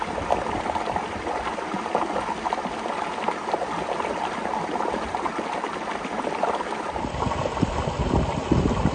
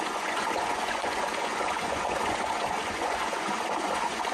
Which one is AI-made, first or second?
second